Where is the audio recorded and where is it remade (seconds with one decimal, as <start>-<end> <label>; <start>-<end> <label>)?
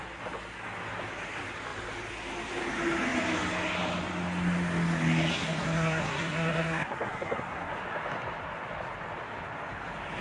0.0-5.3 recorded; 5.3-7.7 remade; 7.7-10.2 recorded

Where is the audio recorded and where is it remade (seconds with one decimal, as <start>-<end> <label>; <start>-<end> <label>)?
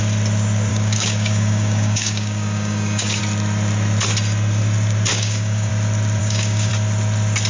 0.0-0.7 recorded; 0.7-3.2 remade; 3.2-5.1 recorded; 5.1-5.7 remade; 5.7-6.2 recorded; 6.2-6.7 remade; 6.7-7.5 recorded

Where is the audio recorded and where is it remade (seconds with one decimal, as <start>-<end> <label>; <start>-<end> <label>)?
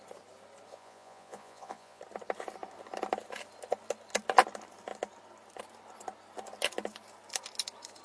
0.0-0.7 recorded; 0.7-2.0 remade; 2.0-8.0 recorded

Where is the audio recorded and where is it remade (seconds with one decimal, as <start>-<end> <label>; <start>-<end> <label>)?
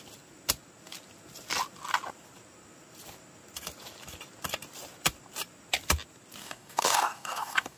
0.0-6.4 recorded; 6.4-7.8 remade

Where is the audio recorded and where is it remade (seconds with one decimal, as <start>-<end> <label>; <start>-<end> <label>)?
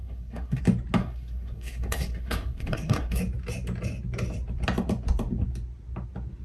0.0-0.6 remade; 0.6-1.0 recorded; 1.0-3.2 remade; 3.2-6.4 recorded